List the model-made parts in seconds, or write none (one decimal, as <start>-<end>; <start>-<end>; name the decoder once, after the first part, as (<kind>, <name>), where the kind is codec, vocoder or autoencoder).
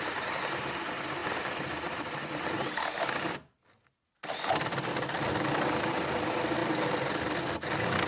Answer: none